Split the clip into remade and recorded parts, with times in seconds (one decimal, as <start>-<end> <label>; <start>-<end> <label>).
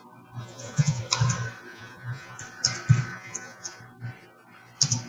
0.0-0.4 recorded; 0.4-1.0 remade; 1.0-1.7 recorded; 1.7-2.4 remade; 2.4-3.1 recorded; 3.1-3.8 remade; 3.8-5.1 recorded